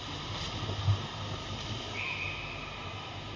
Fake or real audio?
real